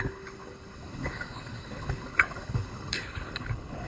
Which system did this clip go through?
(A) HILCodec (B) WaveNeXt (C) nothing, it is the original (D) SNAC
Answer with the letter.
A